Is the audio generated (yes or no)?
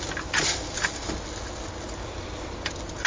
no